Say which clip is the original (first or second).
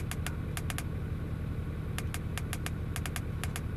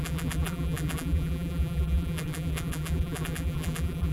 first